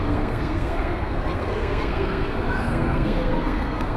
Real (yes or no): no